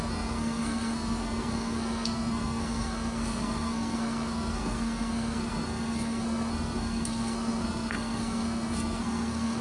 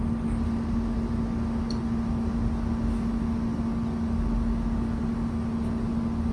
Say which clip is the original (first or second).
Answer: second